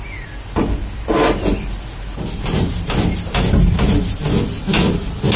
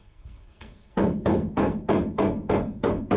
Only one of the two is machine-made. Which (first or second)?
second